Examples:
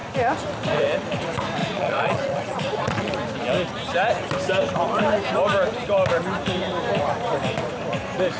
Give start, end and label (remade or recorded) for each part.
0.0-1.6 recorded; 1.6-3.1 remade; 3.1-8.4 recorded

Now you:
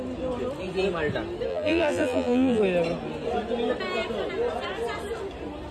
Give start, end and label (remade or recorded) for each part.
0.0-1.5 recorded; 1.5-2.6 remade; 2.6-5.7 recorded

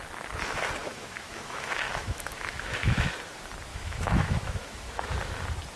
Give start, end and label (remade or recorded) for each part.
0.0-0.8 recorded; 0.8-3.1 remade; 3.1-3.7 recorded; 3.7-5.1 remade; 5.1-5.8 recorded

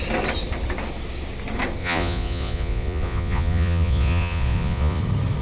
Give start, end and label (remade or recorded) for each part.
0.0-1.8 recorded; 1.8-5.0 remade; 5.0-5.4 recorded

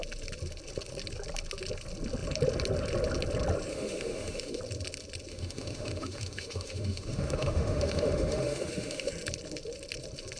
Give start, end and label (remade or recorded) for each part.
0.0-3.7 recorded; 3.7-4.6 remade; 4.6-5.3 recorded; 5.3-9.1 remade; 9.1-10.4 recorded

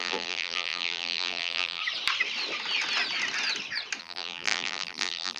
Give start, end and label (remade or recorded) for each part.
0.0-1.8 remade; 1.8-4.0 recorded; 4.0-5.4 remade